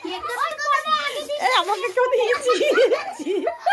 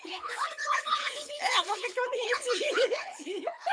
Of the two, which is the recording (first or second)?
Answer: first